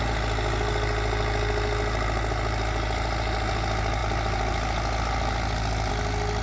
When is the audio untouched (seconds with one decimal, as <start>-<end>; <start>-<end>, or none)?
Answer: 0.0-6.4